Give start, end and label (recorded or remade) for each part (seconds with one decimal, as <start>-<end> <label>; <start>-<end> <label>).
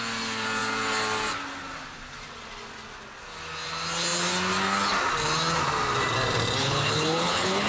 0.0-6.6 recorded; 6.6-7.7 remade